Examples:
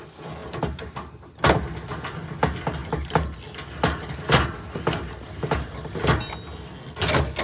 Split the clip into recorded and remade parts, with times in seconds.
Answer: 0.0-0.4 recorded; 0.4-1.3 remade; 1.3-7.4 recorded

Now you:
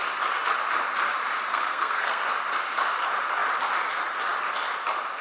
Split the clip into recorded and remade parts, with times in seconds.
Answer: 0.0-1.5 recorded; 1.5-2.2 remade; 2.2-5.2 recorded

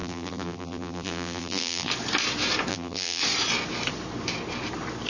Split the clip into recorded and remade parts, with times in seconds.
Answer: 0.0-1.9 remade; 1.9-2.7 recorded; 2.7-3.2 remade; 3.2-5.1 recorded

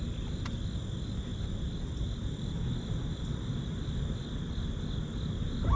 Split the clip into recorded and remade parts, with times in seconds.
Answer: 0.0-5.8 recorded

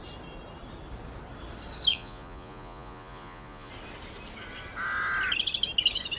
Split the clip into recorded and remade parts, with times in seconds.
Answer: 0.0-1.9 recorded; 1.9-3.7 remade; 3.7-6.2 recorded

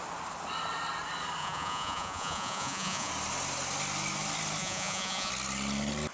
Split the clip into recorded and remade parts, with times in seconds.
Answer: 0.0-1.4 recorded; 1.4-3.1 remade; 3.1-4.6 recorded; 4.6-5.3 remade; 5.3-6.1 recorded

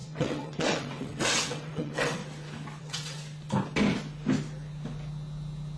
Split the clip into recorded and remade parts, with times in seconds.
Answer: 0.0-2.2 remade; 2.2-2.8 recorded; 2.8-3.2 remade; 3.2-5.8 recorded